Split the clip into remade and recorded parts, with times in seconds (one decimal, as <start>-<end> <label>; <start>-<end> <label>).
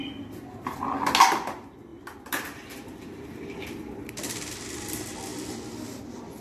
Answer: 0.0-1.9 recorded; 1.9-4.6 remade; 4.6-5.3 recorded; 5.3-6.0 remade; 6.0-6.4 recorded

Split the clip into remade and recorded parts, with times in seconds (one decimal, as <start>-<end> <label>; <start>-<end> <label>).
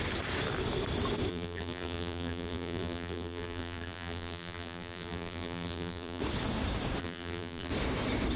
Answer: 0.0-1.3 recorded; 1.3-6.2 remade; 6.2-7.0 recorded; 7.0-7.7 remade; 7.7-8.4 recorded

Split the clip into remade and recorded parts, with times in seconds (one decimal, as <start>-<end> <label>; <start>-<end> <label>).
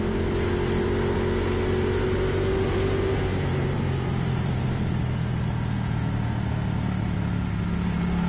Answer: 0.0-3.1 recorded; 3.1-4.6 remade; 4.6-8.3 recorded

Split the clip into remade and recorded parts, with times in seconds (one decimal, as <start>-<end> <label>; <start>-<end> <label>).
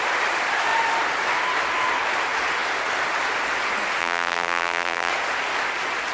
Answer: 0.0-4.0 recorded; 4.0-5.1 remade; 5.1-6.1 recorded